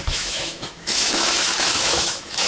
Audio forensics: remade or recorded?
remade